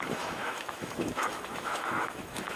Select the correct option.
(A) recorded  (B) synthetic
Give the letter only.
B